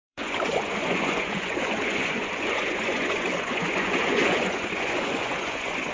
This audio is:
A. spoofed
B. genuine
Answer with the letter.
A